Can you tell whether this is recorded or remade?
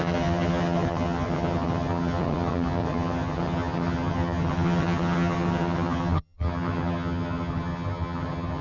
remade